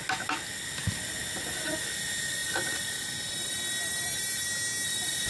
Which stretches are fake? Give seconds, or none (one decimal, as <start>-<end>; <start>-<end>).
none